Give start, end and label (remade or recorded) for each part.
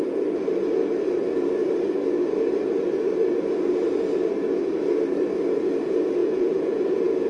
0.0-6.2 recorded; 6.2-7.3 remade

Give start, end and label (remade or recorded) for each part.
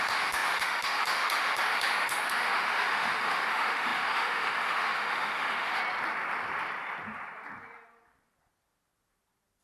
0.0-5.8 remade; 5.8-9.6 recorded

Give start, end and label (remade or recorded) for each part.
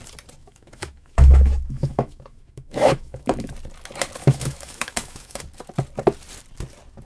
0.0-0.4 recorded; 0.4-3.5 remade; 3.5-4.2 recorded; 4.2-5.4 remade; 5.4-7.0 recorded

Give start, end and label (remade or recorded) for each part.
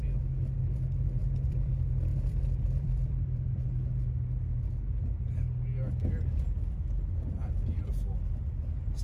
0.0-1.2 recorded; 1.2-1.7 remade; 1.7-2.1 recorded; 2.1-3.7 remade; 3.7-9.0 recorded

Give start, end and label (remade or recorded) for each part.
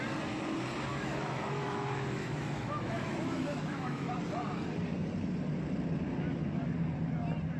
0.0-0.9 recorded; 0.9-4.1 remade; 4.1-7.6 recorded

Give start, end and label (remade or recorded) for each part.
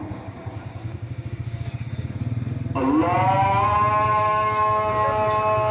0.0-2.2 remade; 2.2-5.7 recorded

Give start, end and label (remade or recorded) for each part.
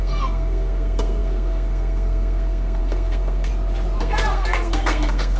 0.0-3.5 remade; 3.5-4.0 recorded; 4.0-5.4 remade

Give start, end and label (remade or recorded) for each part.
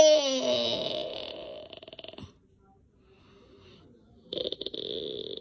0.0-5.4 recorded